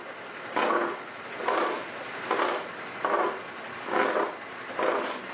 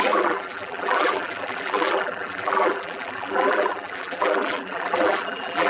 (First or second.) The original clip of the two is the first